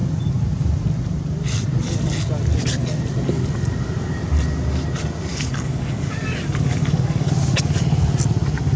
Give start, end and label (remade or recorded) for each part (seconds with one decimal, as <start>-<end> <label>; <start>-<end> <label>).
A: 0.0-5.3 recorded; 5.3-7.3 remade; 7.3-8.8 recorded